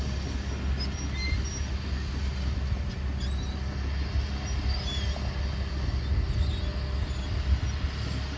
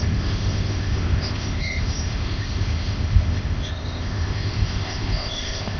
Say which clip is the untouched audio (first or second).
first